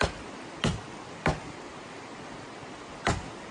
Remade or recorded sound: recorded